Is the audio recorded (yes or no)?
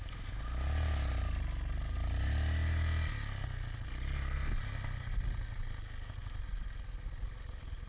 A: yes